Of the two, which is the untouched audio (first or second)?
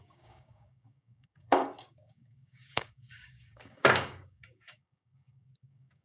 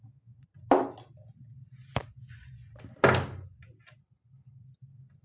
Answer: second